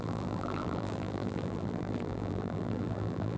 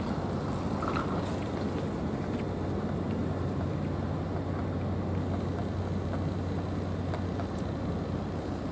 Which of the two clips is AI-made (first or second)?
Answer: first